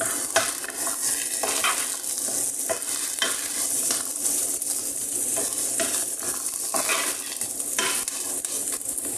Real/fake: real